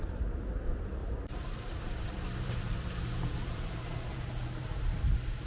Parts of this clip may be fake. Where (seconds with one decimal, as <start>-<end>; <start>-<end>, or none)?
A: 1.0-4.2